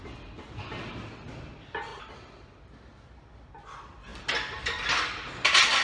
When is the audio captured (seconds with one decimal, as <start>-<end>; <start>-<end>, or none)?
0.0-5.8